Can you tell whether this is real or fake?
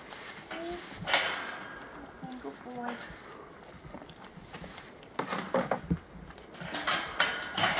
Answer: real